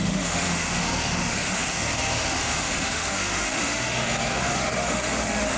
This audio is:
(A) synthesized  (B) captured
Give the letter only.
A